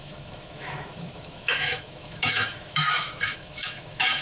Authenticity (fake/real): fake